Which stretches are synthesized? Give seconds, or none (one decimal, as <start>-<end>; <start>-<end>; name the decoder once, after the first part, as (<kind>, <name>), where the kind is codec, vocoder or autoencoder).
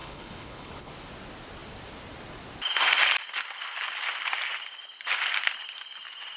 0.0-0.9 (codec, HILCodec)